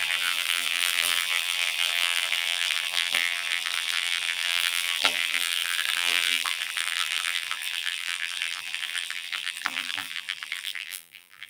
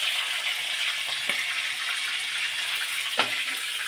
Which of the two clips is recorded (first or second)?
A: second